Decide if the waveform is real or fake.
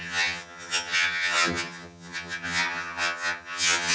fake